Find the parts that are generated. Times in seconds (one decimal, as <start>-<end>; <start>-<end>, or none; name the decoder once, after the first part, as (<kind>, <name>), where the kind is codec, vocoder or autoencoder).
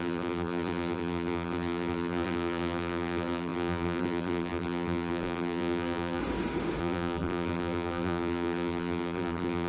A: 0.0-6.2 (vocoder, BigVGAN v2); 6.8-9.7